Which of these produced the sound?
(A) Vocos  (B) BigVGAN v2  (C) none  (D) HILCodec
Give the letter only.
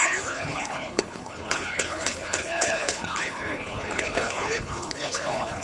D